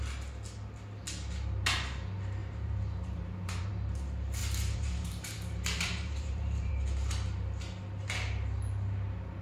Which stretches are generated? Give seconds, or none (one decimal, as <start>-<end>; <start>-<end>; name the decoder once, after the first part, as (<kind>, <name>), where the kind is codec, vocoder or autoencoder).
2.4-3.7 (vocoder, BigVGAN v2); 4.4-6.7